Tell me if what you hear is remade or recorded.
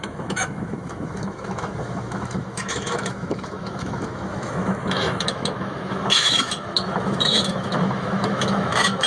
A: remade